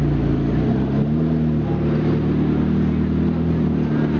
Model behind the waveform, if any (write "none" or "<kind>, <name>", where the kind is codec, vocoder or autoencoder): none